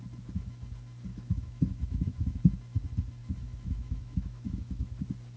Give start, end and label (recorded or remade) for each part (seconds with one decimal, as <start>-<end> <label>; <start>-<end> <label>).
0.0-1.1 recorded; 1.1-2.4 remade; 2.4-3.2 recorded; 3.2-5.0 remade; 5.0-5.4 recorded